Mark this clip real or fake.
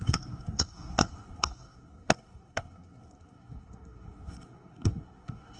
fake